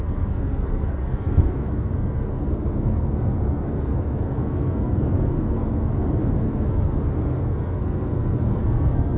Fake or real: fake